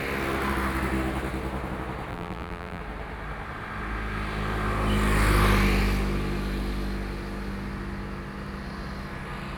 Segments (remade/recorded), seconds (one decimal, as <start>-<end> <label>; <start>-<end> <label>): 0.0-2.1 recorded; 2.1-2.8 remade; 2.8-9.6 recorded